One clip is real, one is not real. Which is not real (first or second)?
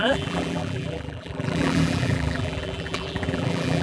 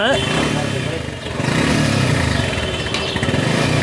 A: first